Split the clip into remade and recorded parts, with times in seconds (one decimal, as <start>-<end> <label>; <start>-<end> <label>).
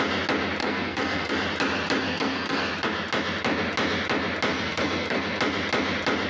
0.0-0.6 recorded; 0.6-1.3 remade; 1.3-2.0 recorded; 2.0-2.7 remade; 2.7-4.5 recorded; 4.5-5.4 remade; 5.4-6.3 recorded